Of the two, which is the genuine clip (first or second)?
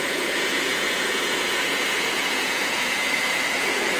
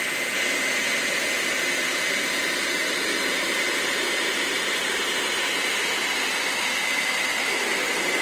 second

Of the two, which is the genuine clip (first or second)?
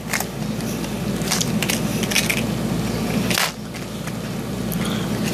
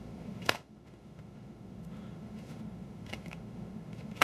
first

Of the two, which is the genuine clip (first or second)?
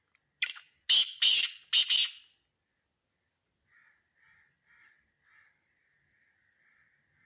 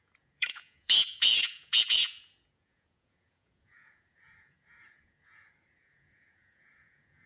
first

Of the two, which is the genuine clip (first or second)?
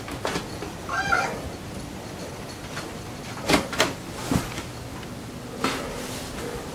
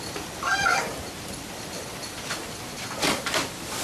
first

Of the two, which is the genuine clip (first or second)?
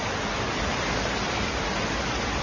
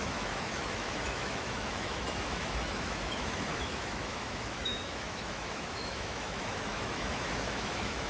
first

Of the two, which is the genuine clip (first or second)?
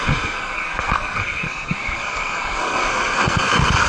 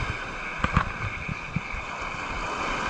second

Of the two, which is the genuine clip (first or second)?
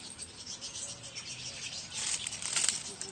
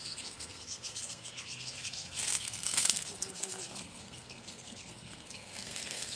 first